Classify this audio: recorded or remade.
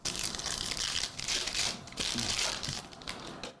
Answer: recorded